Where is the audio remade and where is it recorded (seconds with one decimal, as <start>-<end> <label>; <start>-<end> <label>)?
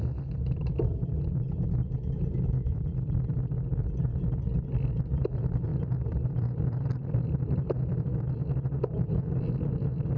0.0-8.4 remade; 8.4-10.2 recorded